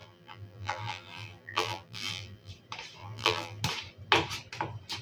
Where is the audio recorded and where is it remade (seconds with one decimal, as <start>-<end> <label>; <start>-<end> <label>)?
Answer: 0.0-2.5 remade; 2.5-3.0 recorded; 3.0-3.6 remade; 3.6-5.0 recorded